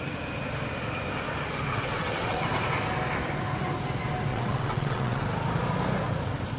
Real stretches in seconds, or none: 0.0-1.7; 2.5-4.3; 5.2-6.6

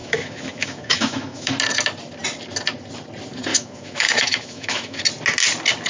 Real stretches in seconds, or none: 1.5-3.5; 5.0-5.9

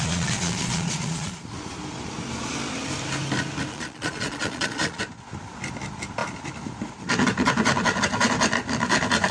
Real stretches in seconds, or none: 1.3-3.7; 5.0-9.3

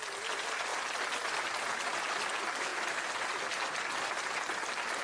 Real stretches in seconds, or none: 0.0-5.0

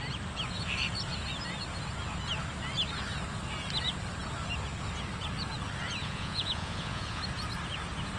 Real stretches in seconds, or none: 0.0-6.0; 7.2-8.2